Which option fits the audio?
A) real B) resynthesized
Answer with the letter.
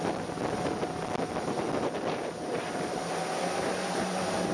A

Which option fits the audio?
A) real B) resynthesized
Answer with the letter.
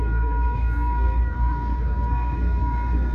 B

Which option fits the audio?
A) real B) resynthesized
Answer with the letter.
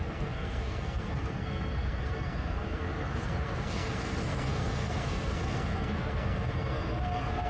B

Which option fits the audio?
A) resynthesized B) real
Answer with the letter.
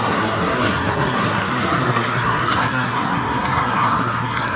A